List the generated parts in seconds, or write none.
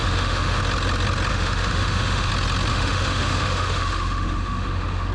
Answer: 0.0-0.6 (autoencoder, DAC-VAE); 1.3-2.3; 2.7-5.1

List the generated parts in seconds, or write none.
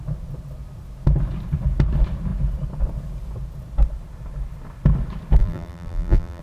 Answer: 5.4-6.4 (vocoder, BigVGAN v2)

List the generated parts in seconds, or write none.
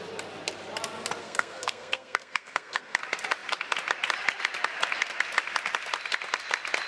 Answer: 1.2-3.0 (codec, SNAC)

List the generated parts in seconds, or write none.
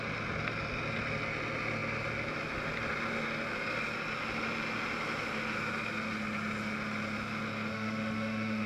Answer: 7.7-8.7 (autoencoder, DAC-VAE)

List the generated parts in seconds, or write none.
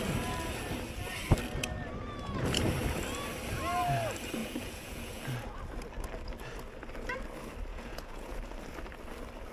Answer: 4.4-5.2 (vocoder, Vocos); 7.7-8.4